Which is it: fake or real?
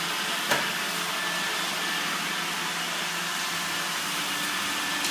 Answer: real